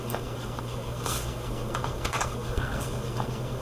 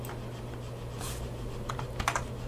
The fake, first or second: first